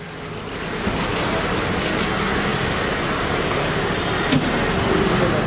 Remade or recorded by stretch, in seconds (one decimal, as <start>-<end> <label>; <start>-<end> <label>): 0.0-5.5 recorded